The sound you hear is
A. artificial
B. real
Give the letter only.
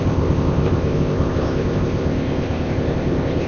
A